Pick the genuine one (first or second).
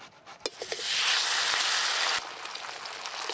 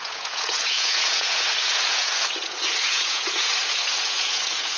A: first